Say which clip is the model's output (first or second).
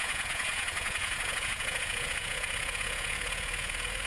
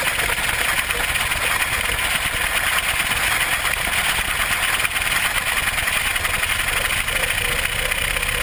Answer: first